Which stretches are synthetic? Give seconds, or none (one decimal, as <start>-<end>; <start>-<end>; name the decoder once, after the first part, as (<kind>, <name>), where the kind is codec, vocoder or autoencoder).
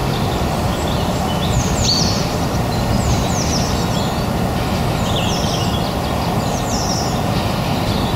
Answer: 0.0-4.0 (vocoder, BigVGAN v2)